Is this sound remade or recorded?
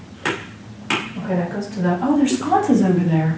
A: recorded